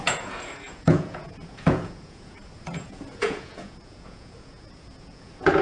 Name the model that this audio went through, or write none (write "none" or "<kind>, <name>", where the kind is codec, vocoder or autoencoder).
vocoder, Vocos